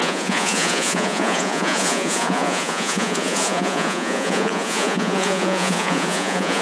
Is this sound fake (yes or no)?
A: yes